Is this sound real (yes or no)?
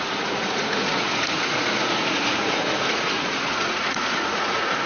no